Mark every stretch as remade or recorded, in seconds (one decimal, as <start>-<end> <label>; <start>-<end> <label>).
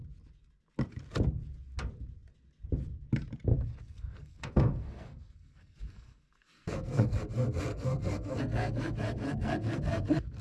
0.0-3.5 recorded; 3.5-7.2 remade; 7.2-7.7 recorded; 7.7-10.4 remade